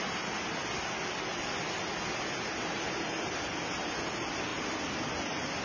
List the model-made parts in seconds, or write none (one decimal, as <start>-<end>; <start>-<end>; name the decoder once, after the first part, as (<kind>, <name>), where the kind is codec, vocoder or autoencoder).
4.5-5.6 (vocoder, BigVGAN v2)